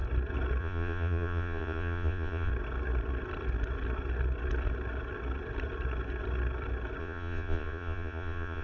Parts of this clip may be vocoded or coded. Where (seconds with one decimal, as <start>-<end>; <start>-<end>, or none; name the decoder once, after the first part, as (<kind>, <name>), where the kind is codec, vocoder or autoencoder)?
0.6-2.5 (vocoder, Vocos); 7.0-8.6